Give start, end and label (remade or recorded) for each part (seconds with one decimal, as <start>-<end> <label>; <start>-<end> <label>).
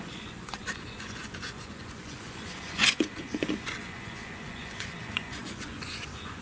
0.0-6.4 remade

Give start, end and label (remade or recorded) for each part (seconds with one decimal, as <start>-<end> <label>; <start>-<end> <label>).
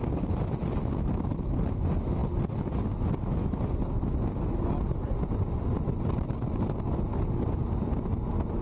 0.0-8.6 recorded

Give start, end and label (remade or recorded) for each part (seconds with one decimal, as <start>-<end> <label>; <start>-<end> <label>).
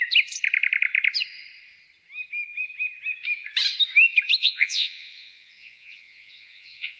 0.0-4.4 recorded; 4.4-7.0 remade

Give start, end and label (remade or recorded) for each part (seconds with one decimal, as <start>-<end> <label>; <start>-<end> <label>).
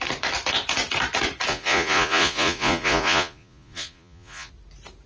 0.0-1.5 recorded; 1.5-4.5 remade; 4.5-5.1 recorded